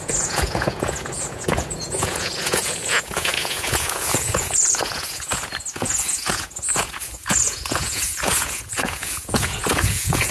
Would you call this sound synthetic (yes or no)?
yes